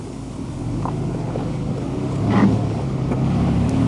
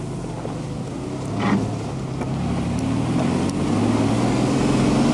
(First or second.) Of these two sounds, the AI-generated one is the first